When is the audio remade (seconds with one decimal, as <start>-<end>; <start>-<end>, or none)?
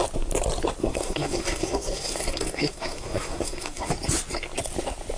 0.8-3.9